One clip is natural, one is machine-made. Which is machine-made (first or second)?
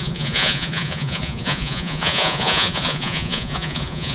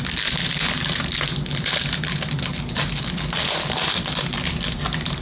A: first